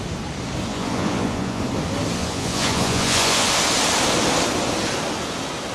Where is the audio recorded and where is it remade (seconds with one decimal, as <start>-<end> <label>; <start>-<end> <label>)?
0.0-0.7 recorded; 0.7-1.6 remade; 1.6-2.2 recorded; 2.2-3.5 remade; 3.5-5.7 recorded